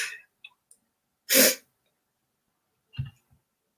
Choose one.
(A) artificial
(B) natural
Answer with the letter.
B